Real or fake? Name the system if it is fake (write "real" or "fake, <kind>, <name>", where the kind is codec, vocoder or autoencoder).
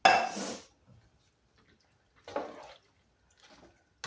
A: real